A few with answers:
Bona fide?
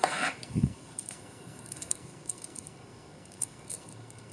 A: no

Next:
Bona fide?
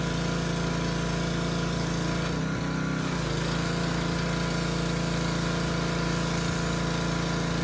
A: yes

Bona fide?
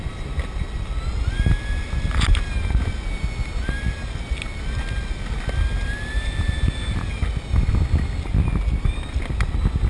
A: yes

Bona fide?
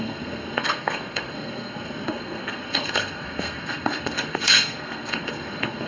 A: no